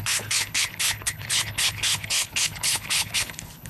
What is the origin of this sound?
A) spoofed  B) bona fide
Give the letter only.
A